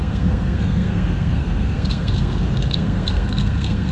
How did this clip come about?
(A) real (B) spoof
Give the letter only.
B